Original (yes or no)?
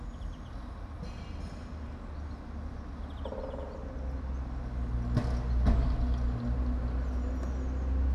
yes